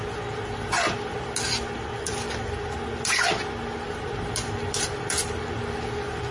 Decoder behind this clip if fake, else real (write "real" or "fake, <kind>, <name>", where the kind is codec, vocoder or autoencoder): real